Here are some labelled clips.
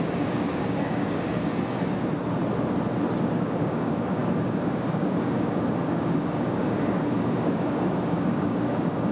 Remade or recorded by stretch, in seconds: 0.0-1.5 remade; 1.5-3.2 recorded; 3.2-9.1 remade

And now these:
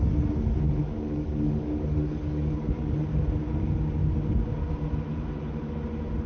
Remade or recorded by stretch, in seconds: 0.0-0.8 recorded; 0.8-3.2 remade; 3.2-6.3 recorded

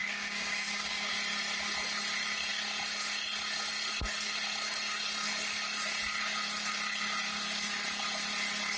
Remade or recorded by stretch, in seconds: 0.0-1.1 remade; 1.1-8.8 recorded

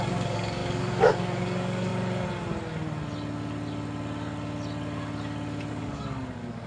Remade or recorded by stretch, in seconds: 0.0-1.9 remade; 1.9-5.7 recorded; 5.7-6.7 remade